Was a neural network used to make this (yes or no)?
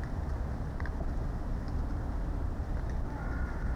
yes